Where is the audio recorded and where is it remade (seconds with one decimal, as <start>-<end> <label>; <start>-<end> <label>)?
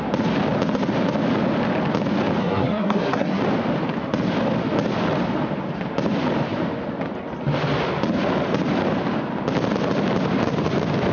0.0-2.4 recorded; 2.4-3.4 remade; 3.4-11.1 recorded